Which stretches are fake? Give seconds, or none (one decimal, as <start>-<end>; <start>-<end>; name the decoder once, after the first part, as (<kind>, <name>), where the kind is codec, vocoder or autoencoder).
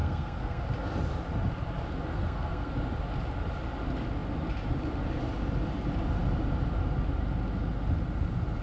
0.0-0.6 (codec, SNAC); 2.1-2.7